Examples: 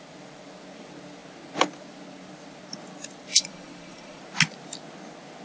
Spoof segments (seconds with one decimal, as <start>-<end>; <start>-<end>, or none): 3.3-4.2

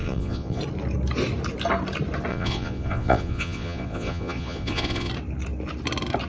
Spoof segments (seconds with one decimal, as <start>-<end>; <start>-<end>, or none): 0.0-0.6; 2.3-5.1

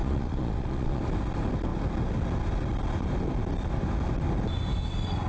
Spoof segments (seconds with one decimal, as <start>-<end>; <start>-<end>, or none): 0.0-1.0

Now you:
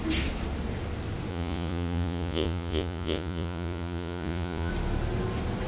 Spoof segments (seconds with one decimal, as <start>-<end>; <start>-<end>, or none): 1.3-4.7

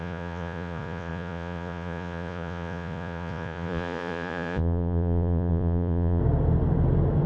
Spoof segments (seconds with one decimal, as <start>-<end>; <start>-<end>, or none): 0.0-6.2